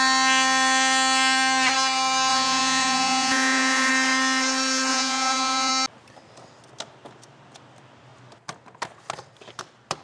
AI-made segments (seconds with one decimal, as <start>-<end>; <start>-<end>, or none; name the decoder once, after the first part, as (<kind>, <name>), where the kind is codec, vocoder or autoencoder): 2.3-3.9 (vocoder, Vocos); 4.9-5.7